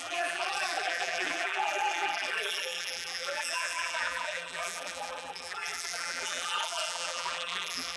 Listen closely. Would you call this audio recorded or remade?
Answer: remade